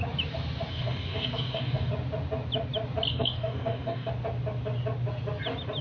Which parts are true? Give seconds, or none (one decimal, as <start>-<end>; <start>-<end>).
0.0-0.7; 1.9-3.1; 4.1-5.8